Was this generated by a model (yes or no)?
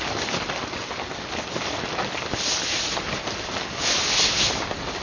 no